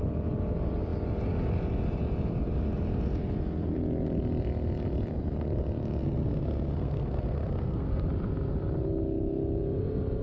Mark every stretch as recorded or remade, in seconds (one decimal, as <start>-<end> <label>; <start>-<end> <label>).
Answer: 0.0-6.0 recorded; 6.0-8.1 remade; 8.1-10.2 recorded